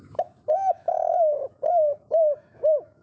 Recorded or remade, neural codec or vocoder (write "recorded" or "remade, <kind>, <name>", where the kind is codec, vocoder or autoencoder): remade, autoencoder, DAC-VAE